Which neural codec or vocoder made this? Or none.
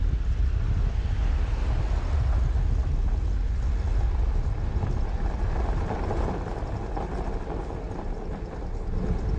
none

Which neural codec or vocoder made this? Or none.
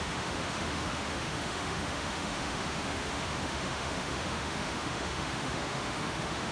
autoencoder, DAC-VAE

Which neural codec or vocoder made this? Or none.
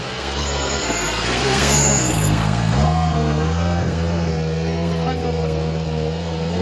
codec, SNAC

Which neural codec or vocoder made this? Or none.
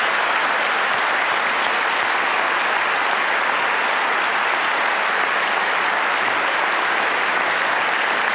none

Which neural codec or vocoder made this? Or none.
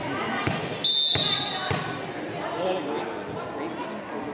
none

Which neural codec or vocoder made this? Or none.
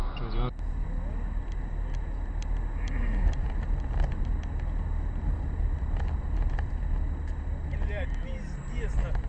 none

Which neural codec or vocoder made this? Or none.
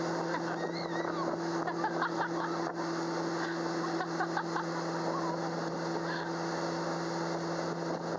none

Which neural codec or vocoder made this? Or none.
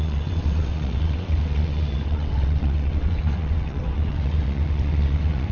vocoder, WaveNeXt